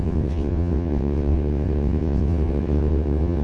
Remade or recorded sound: remade